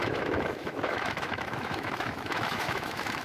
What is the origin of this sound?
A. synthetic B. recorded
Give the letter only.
A